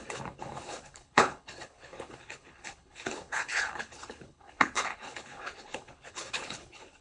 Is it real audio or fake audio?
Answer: fake